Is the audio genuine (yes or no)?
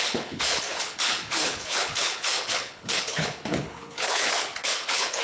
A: no